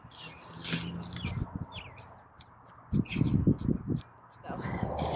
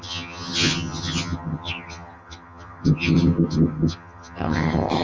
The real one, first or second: first